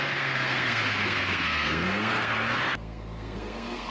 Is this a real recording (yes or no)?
no